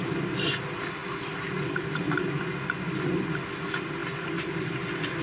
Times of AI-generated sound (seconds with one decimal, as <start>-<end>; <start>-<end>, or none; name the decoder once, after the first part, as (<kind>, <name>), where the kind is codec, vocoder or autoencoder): none